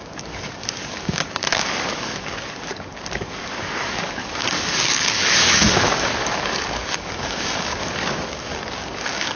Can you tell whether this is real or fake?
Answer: fake